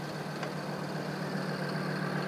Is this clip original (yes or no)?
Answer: yes